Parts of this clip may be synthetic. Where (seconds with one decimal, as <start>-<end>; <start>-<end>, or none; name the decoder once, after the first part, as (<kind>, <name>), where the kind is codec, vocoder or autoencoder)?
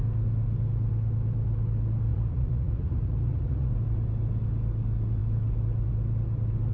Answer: 2.1-3.7 (vocoder, Vocos)